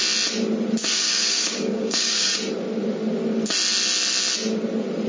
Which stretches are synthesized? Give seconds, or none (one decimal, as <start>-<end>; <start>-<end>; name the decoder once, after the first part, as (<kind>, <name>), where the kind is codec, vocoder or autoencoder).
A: 0.9-2.4 (codec, DAC)